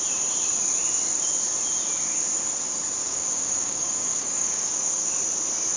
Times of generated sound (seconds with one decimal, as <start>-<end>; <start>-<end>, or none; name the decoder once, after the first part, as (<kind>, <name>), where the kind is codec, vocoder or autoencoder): 3.0-5.1 (codec, DAC)